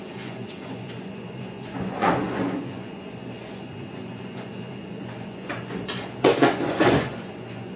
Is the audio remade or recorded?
remade